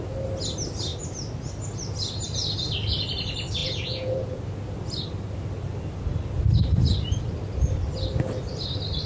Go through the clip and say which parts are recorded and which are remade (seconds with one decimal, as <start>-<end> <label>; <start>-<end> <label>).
0.0-3.6 recorded; 3.6-4.4 remade; 4.4-9.1 recorded